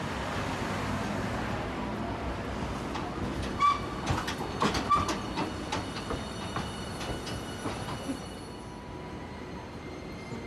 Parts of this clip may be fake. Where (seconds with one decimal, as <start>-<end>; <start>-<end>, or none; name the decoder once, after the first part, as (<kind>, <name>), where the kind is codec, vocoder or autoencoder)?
none